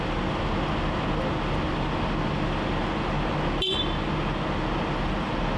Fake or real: real